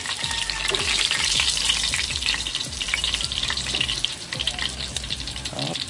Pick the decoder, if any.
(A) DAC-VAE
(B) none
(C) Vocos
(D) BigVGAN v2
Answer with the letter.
D